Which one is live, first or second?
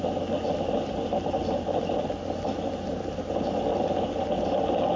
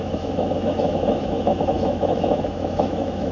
first